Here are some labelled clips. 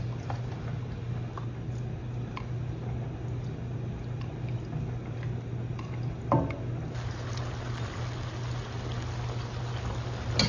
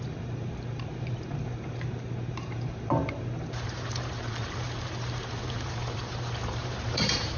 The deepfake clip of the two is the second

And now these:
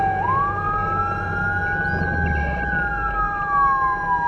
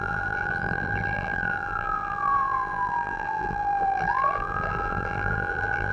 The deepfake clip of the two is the second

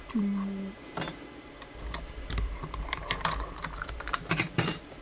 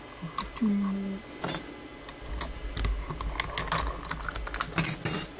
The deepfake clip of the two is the first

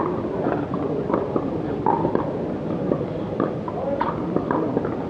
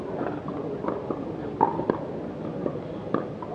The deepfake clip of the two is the first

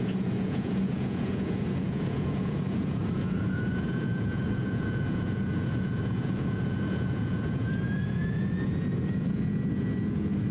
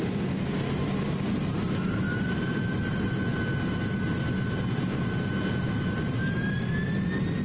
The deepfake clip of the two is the first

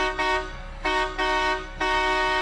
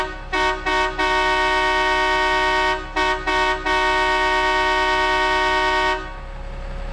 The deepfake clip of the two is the first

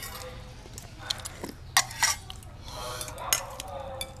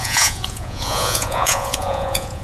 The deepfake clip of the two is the second